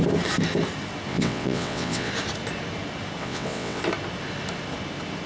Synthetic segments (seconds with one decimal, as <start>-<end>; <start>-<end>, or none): 1.1-2.1; 3.2-3.8